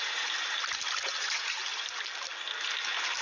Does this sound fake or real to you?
real